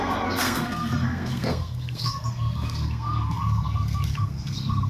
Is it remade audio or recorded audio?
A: remade